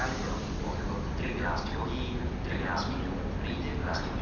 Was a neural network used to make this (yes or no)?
no